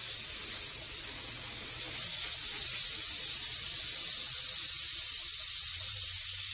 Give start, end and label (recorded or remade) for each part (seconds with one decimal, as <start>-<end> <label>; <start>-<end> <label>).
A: 0.0-6.5 recorded